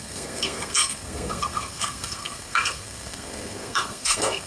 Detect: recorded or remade remade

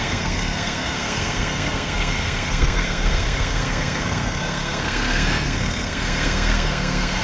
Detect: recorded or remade remade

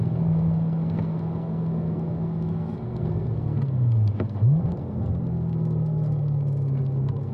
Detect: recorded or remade remade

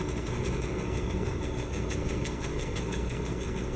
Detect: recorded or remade remade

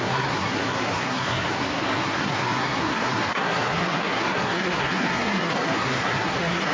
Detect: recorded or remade remade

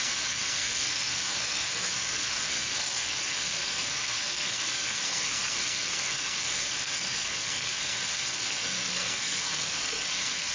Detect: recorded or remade remade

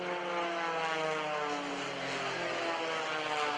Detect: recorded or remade recorded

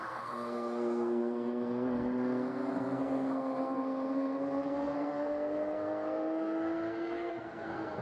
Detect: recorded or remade remade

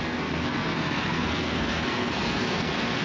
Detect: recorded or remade remade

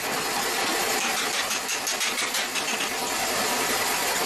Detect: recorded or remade recorded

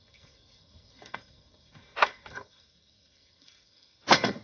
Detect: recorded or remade remade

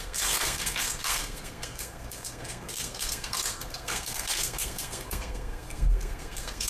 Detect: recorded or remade remade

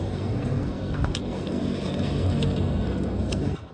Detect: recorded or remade remade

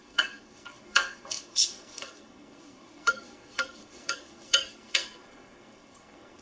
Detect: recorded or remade remade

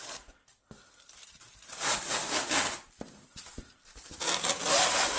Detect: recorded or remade recorded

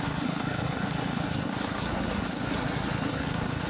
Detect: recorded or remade remade